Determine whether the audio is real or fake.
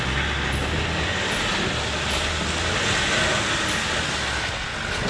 real